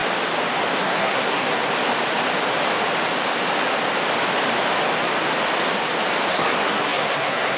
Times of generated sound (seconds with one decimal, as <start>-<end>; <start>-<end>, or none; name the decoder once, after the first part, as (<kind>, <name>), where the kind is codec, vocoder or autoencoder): 0.8-1.7 (codec, SNAC); 6.3-7.6